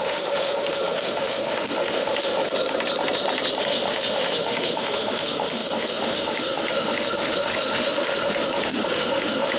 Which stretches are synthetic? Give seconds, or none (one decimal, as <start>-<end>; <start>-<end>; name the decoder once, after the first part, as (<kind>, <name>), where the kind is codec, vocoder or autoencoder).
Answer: 0.0-2.4 (autoencoder, DAC-VAE); 3.6-9.6